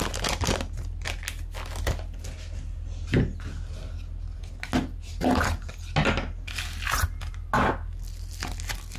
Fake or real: real